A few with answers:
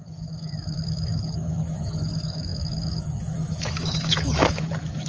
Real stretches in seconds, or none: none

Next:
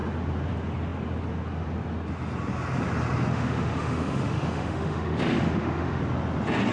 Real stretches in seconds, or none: 0.0-3.3; 6.0-6.7

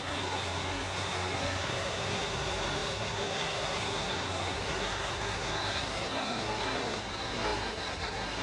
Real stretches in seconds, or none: none

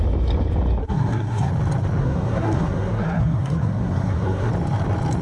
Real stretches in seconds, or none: 0.0-0.8; 1.5-2.0; 4.5-5.2

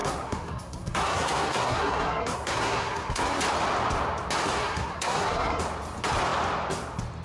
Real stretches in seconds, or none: 3.4-4.6; 5.6-7.2